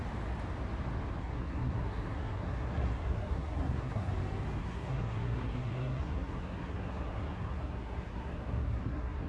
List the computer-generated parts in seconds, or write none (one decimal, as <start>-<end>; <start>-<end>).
1.2-4.1; 4.6-9.3